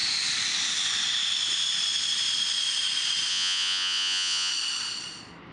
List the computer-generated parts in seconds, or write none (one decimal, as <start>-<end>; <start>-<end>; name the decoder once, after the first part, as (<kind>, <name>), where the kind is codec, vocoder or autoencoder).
3.3-4.5 (vocoder, Vocos)